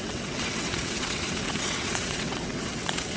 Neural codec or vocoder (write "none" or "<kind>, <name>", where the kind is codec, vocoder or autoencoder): vocoder, WaveNeXt